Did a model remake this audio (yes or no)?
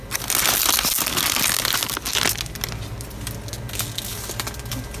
no